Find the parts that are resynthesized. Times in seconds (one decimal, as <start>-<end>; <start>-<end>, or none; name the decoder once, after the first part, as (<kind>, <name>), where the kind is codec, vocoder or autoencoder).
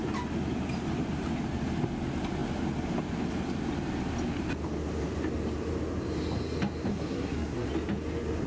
6.9-7.7 (codec, SNAC)